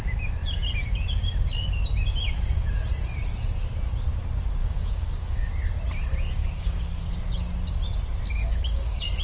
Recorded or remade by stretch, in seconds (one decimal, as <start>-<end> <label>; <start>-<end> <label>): 0.0-4.6 recorded; 4.6-5.5 remade; 5.5-6.4 recorded; 6.4-7.0 remade; 7.0-8.4 recorded; 8.4-9.2 remade